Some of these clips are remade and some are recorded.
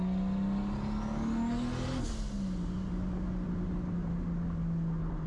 recorded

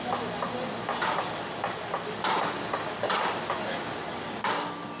recorded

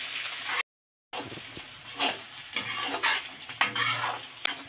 recorded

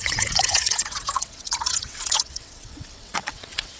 remade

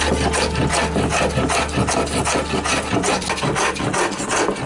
recorded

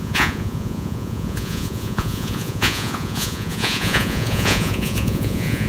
remade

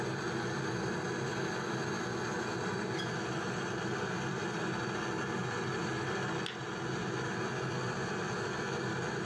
recorded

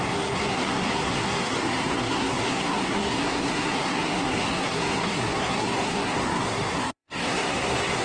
remade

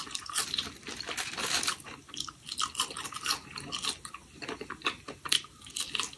recorded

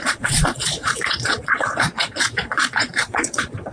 remade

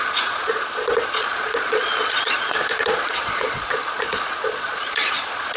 remade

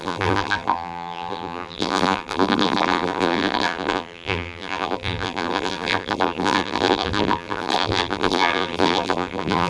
remade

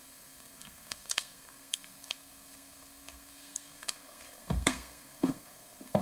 remade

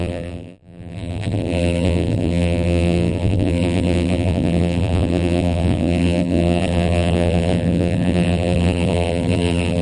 remade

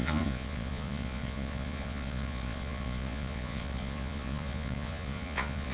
remade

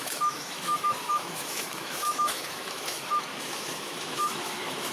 remade